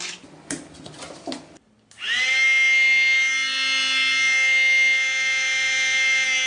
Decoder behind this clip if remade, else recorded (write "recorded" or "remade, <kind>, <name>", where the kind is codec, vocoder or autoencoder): recorded